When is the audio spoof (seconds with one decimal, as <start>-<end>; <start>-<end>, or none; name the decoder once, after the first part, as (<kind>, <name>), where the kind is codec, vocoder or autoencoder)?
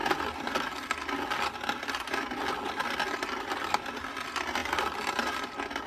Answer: none